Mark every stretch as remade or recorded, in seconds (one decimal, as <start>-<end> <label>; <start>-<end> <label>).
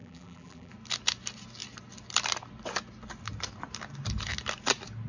0.0-0.7 remade; 0.7-5.1 recorded